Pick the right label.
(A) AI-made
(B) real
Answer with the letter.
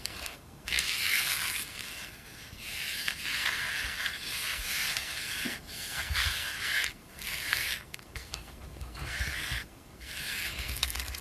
A